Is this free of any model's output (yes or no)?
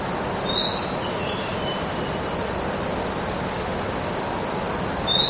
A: yes